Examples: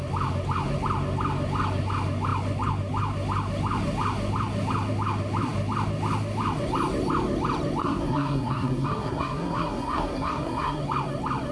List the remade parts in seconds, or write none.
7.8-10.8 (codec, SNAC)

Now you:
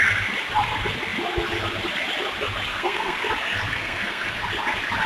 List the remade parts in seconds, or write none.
2.7-3.3 (codec, SNAC); 3.7-4.4

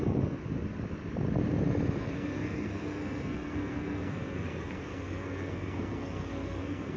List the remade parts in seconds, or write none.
0.0-0.4 (codec, SNAC); 2.0-7.0

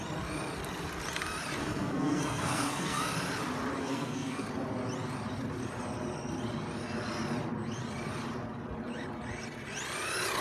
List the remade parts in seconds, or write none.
1.6-3.1 (codec, SNAC); 3.8-4.5

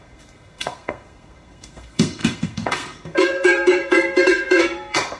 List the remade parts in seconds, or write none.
0.0-5.2 (codec, SNAC)

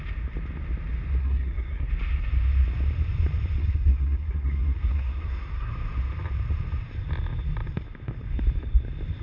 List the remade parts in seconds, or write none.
1.2-1.9 (codec, SNAC); 3.6-5.7

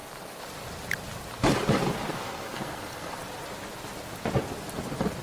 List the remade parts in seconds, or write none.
2.1-3.2 (codec, SNAC)

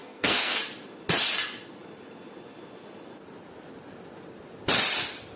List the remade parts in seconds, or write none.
0.0-0.6 (codec, SNAC)